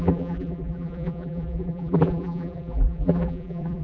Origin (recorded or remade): remade